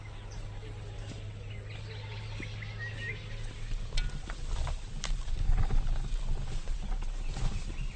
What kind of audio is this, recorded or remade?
recorded